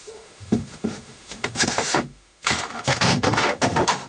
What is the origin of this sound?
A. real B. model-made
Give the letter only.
B